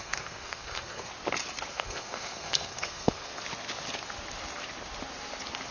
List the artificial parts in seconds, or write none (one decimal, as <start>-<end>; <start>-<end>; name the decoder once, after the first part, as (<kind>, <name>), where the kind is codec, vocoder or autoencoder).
0.0-1.1 (codec, SNAC); 1.7-3.3